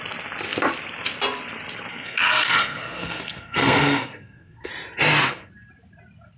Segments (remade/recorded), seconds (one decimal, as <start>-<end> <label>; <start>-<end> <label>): 0.0-1.9 recorded; 1.9-4.7 remade; 4.7-6.4 recorded